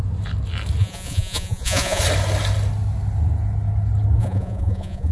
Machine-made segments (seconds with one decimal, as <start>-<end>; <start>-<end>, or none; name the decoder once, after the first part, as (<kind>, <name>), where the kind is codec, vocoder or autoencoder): 0.8-2.0 (vocoder, Vocos); 4.2-5.1